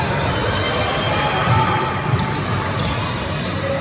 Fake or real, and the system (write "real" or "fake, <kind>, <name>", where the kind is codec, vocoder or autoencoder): real